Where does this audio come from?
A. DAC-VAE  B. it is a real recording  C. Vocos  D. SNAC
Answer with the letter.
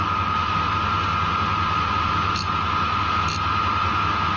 B